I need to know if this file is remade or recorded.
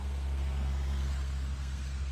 remade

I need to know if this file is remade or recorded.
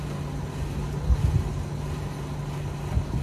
recorded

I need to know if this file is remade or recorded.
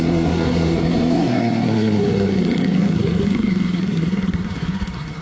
remade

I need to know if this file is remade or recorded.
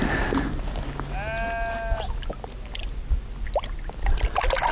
recorded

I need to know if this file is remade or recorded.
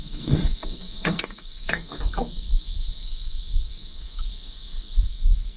remade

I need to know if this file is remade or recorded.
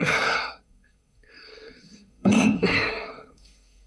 remade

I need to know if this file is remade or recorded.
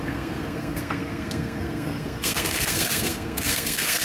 remade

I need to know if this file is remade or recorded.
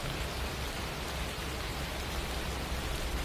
recorded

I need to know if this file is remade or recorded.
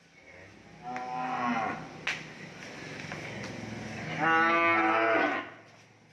recorded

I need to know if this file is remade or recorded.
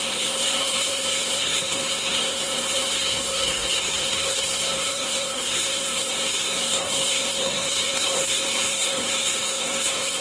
remade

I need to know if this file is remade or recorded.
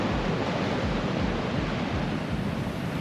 recorded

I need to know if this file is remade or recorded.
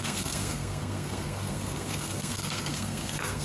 remade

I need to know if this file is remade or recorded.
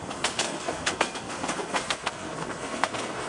remade